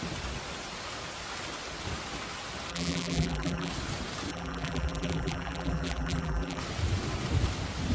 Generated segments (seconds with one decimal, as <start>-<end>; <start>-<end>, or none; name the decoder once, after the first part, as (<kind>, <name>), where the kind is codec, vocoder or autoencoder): 2.7-3.7 (vocoder, BigVGAN v2); 4.3-6.6